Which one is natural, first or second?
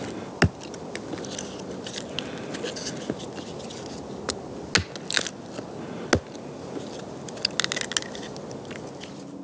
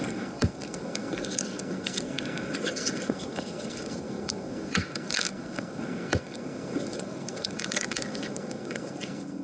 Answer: first